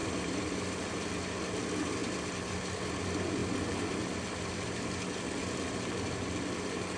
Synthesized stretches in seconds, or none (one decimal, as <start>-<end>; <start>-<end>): 0.0-0.7